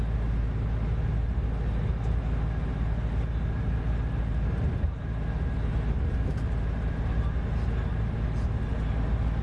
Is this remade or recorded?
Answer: recorded